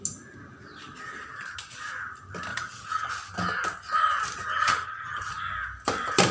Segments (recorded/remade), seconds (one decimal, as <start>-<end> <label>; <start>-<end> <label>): 0.0-2.5 recorded; 2.5-3.1 remade; 3.1-4.5 recorded; 4.5-5.2 remade; 5.2-6.3 recorded